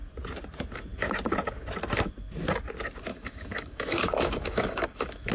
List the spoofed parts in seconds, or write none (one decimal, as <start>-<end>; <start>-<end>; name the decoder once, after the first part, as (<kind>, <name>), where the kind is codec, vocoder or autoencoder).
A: 3.1-5.3 (autoencoder, DAC-VAE)